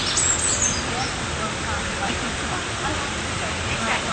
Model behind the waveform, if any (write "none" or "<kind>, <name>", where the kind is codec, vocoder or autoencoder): none